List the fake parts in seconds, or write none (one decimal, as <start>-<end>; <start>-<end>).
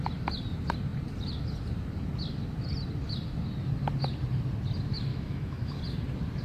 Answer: 5.1-5.8